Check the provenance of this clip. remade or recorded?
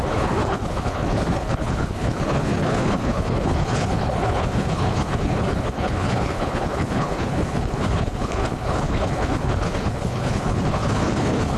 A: remade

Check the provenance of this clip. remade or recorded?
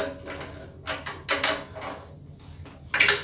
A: recorded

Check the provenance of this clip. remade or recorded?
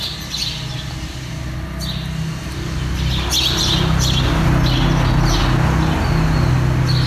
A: recorded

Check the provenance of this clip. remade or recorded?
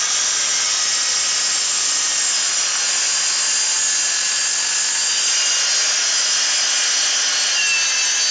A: recorded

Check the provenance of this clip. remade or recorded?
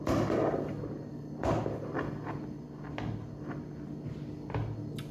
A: recorded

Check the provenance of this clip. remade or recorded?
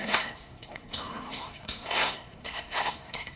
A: remade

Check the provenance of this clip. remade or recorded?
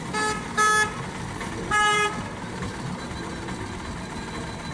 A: recorded